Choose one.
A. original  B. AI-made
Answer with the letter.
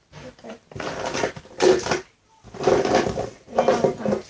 A